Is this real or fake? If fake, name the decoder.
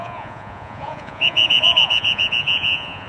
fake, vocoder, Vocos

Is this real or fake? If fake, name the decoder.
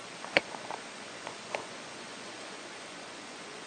fake, vocoder, Vocos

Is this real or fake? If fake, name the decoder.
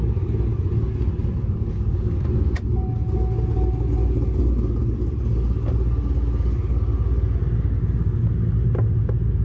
real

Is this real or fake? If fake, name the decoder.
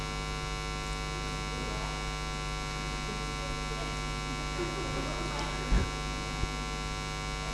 real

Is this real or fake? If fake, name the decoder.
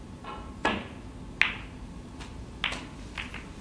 real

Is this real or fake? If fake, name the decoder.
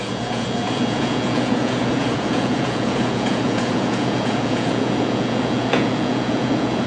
fake, vocoder, Vocos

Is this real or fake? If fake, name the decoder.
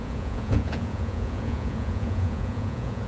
fake, vocoder, Vocos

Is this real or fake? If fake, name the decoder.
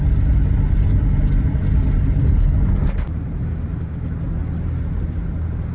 real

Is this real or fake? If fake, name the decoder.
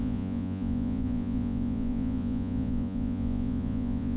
fake, vocoder, Vocos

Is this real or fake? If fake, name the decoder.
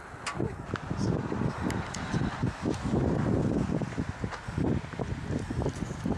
real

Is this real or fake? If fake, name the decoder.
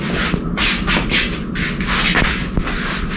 real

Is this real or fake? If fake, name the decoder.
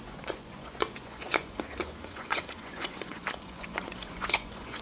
fake, vocoder, Vocos